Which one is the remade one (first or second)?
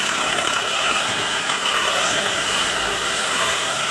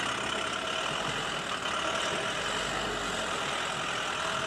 first